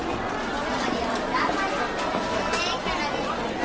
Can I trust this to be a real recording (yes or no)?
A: yes